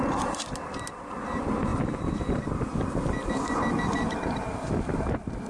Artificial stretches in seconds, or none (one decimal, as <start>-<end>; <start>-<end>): 1.7-2.6

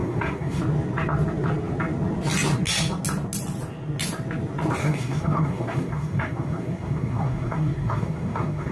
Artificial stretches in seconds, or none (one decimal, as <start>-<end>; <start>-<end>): 0.0-0.6; 4.8-8.7

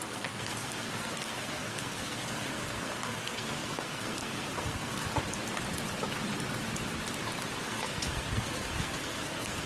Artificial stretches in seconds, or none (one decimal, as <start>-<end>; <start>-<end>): 0.0-5.1; 7.6-9.7

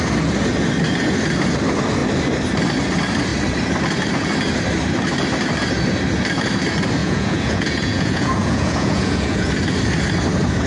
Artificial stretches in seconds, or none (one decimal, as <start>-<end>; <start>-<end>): 7.0-9.5

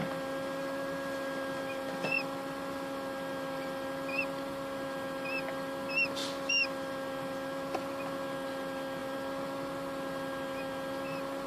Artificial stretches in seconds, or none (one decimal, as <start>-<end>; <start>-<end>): 0.0-4.2; 6.2-7.8; 9.0-9.7